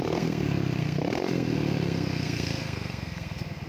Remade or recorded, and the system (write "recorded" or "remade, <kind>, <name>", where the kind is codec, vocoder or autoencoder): remade, codec, SNAC